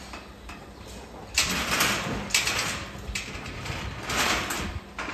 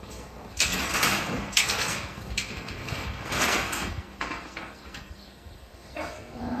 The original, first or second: first